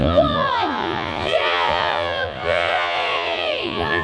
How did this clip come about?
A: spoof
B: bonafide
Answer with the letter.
A